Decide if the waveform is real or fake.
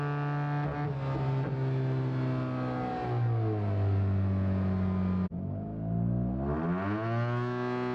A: real